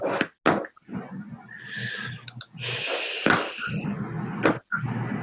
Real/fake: real